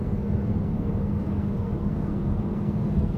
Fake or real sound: fake